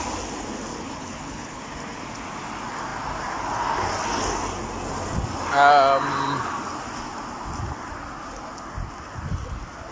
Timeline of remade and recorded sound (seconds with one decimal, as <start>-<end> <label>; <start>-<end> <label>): 0.0-0.7 recorded; 0.7-1.6 remade; 1.6-9.9 recorded